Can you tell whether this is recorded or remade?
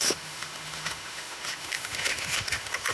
remade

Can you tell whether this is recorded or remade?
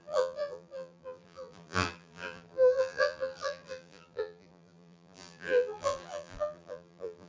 remade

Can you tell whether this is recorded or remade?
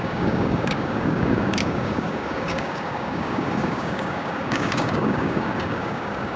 remade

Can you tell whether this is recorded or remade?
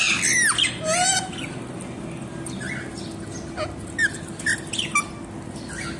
recorded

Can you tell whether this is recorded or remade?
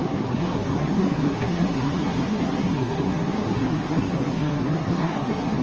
remade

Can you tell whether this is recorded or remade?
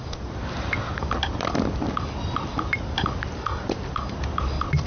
remade